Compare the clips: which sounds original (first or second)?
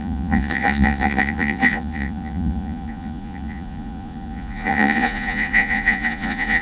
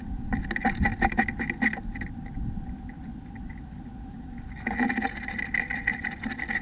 second